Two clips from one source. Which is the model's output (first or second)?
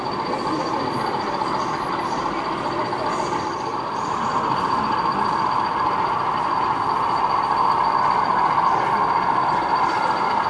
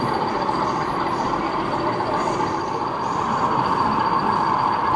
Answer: second